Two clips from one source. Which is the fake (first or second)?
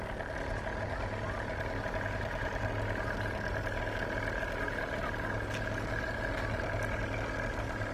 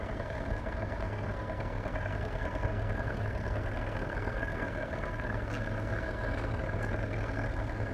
second